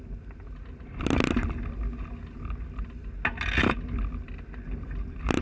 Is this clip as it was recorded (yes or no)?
yes